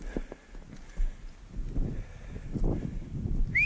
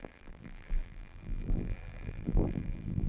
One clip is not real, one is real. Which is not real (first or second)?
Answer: second